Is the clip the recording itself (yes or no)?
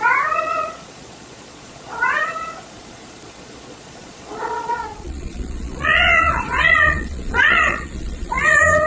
no